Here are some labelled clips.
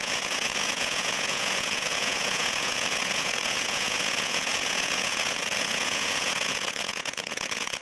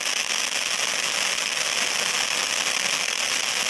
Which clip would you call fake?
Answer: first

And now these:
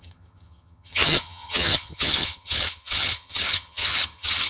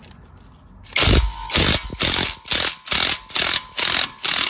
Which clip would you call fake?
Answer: first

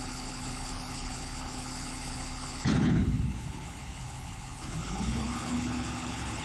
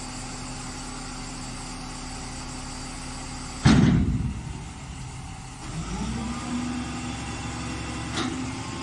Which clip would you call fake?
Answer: first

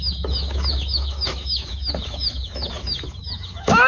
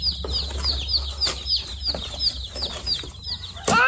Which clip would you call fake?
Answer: first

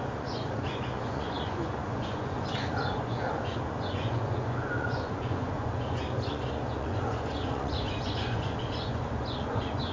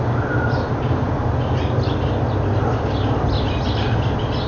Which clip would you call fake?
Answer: first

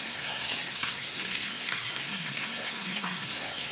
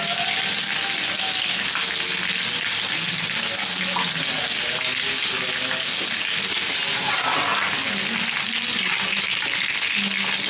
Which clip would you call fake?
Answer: first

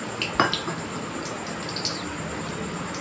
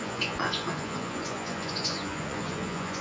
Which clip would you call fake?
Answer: second